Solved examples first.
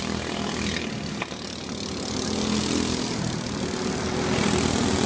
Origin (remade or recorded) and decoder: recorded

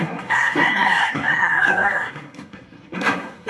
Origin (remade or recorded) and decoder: remade, codec, SNAC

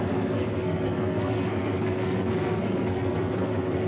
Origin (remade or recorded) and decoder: remade, codec, SNAC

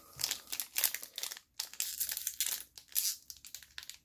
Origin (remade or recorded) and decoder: recorded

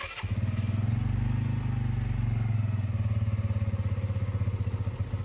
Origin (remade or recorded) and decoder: recorded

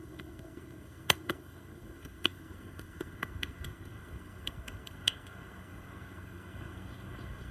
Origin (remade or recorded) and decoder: remade, codec, SNAC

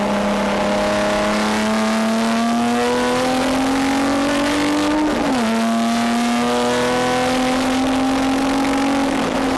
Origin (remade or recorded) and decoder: recorded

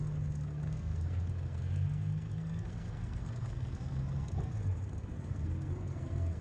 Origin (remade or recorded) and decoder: remade, codec, SNAC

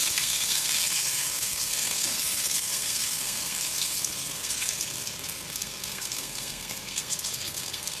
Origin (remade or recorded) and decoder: remade, codec, SNAC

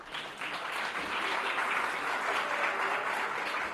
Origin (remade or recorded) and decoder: recorded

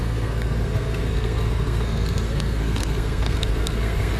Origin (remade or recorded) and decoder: remade, codec, SNAC